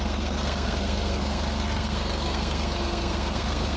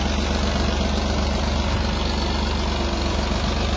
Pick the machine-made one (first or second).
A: first